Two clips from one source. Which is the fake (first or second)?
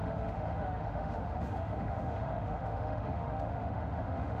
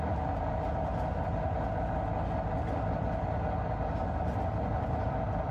first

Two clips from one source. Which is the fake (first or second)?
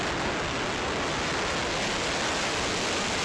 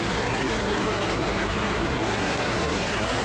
second